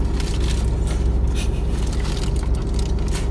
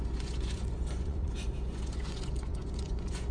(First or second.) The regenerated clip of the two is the second